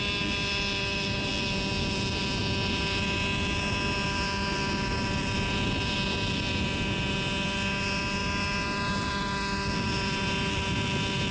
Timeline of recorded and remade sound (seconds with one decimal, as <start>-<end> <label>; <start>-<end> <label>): 0.0-11.3 recorded